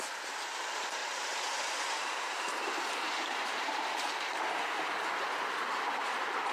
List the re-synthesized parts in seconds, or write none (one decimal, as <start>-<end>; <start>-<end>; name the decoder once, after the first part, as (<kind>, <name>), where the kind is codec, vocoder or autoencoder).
1.0-4.9 (vocoder, BigVGAN v2)